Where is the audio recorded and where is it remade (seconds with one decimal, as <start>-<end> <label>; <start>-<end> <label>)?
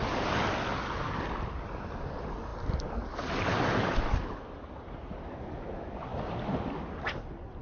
0.0-7.6 recorded